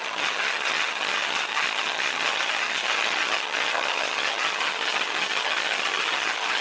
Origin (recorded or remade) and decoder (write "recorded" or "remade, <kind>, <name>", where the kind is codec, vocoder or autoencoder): remade, vocoder, HiFi-GAN